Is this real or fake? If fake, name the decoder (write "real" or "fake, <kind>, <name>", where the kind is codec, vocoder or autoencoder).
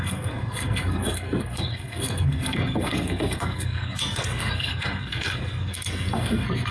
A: fake, codec, SNAC